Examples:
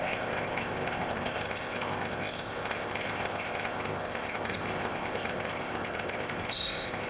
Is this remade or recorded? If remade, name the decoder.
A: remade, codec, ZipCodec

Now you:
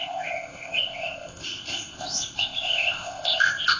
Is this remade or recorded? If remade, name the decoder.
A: remade, codec, ZipCodec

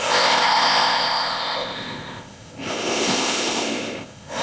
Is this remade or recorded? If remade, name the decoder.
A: remade, codec, ZipCodec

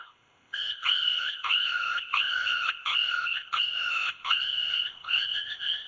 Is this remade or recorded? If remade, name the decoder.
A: remade, codec, ZipCodec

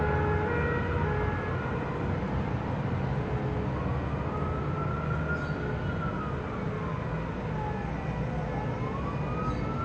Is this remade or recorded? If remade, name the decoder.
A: recorded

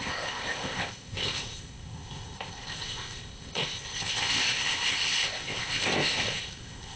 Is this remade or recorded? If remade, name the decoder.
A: remade, codec, ZipCodec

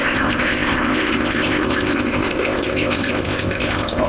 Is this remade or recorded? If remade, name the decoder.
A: remade, codec, ZipCodec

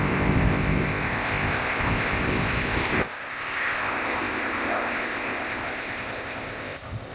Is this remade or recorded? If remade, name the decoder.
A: remade, codec, ZipCodec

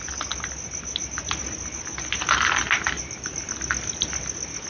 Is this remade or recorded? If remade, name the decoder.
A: recorded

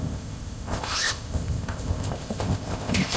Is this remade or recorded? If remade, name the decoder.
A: remade, codec, ZipCodec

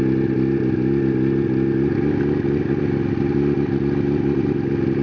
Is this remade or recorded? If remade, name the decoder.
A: recorded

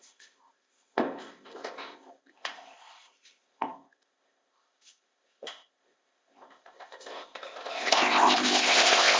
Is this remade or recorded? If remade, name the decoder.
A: remade, codec, ZipCodec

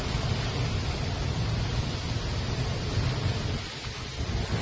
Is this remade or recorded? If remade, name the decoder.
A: recorded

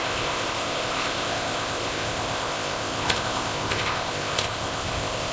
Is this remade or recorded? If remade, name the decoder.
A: remade, codec, ZipCodec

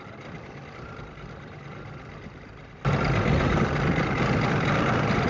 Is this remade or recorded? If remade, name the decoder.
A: recorded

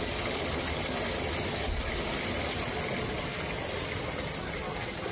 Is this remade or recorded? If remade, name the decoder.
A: recorded